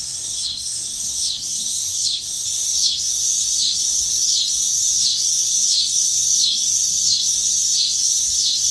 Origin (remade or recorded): remade